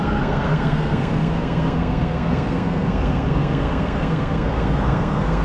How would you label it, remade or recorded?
remade